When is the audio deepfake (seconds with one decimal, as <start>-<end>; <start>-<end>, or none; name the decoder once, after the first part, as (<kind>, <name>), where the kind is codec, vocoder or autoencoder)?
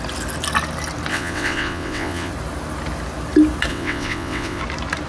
1.1-2.3 (vocoder, WaveNeXt); 3.7-4.6